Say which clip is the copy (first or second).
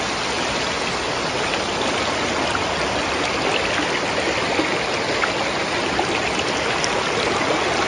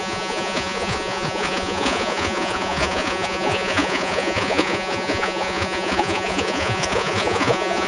second